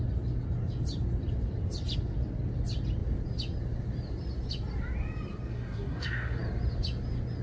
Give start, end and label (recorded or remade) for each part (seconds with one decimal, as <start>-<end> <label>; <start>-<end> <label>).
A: 0.0-5.5 recorded; 5.5-6.4 remade; 6.4-7.4 recorded